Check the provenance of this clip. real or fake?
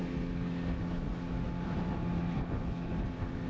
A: real